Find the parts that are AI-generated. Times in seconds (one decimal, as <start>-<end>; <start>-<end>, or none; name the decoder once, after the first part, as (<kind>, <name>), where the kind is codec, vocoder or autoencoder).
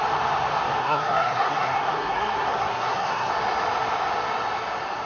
0.8-3.3 (codec, SNAC)